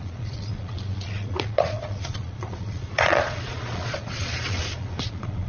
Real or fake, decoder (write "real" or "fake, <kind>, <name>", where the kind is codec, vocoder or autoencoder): fake, vocoder, Vocos